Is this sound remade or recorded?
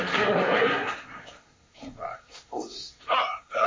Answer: remade